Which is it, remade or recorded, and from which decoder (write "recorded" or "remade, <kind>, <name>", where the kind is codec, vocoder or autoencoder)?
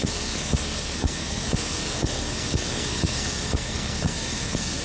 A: remade, codec, SNAC